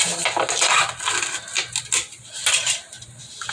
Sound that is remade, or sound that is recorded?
recorded